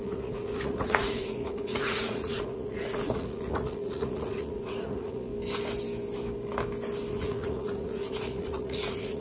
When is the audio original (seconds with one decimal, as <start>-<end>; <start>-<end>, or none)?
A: 5.3-7.1